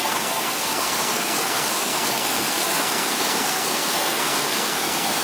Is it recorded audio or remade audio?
remade